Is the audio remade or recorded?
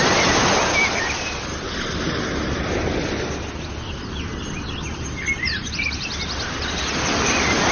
recorded